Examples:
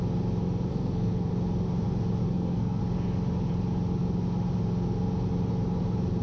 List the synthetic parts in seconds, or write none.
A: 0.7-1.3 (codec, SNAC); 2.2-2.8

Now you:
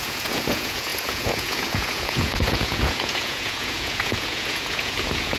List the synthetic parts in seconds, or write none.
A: 0.0-5.4 (vocoder, Vocos)

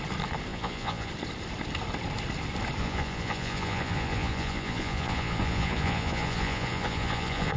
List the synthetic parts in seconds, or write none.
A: 0.5-1.1 (vocoder, Vocos); 2.8-7.6

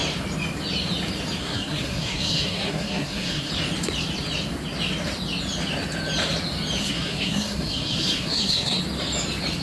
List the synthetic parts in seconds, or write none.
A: 1.4-3.5 (codec, SNAC); 6.8-8.8